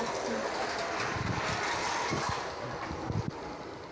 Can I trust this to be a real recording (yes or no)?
yes